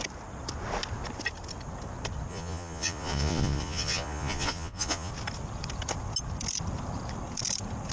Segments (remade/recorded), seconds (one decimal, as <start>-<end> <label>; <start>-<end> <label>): 0.0-2.3 recorded; 2.3-5.1 remade; 5.1-7.9 recorded